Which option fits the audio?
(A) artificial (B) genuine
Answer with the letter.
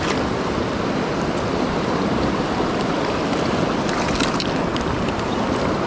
B